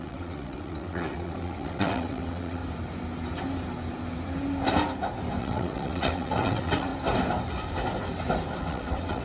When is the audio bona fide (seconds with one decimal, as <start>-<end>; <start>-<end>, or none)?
2.6-5.4; 6.9-8.6